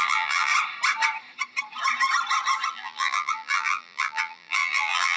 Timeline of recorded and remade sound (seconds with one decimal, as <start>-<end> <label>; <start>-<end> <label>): 0.0-0.5 remade; 0.5-2.7 recorded; 2.7-5.2 remade

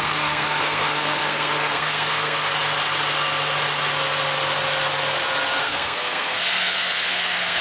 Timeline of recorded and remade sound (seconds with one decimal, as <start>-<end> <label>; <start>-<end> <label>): 0.0-2.5 remade; 2.5-5.6 recorded; 5.6-7.6 remade